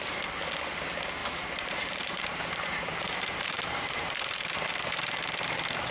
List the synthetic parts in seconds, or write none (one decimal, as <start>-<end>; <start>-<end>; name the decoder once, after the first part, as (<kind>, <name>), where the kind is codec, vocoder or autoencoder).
1.2-4.7 (vocoder, BigVGAN v2)